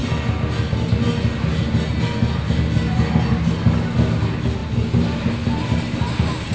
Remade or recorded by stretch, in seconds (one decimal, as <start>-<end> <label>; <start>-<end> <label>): 0.0-6.5 recorded